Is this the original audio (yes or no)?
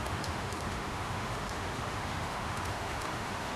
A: no